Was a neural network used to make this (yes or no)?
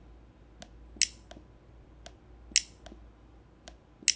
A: no